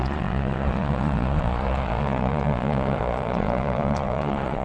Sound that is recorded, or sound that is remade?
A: remade